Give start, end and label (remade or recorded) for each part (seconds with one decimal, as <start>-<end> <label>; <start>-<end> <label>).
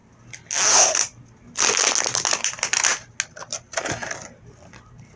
0.0-5.2 recorded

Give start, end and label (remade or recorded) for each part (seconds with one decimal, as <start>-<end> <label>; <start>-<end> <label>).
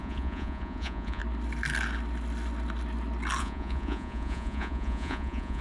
0.0-1.2 remade; 1.2-3.4 recorded; 3.4-5.6 remade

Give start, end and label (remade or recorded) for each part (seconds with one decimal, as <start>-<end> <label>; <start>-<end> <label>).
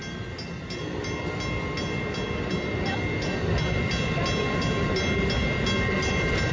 0.0-6.5 recorded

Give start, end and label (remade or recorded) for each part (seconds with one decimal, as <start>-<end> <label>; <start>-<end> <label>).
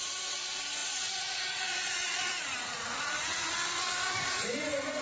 0.0-5.0 remade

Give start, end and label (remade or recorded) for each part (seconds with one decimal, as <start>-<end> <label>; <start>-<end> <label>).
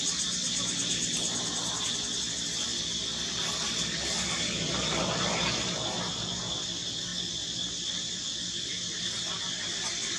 0.0-10.2 recorded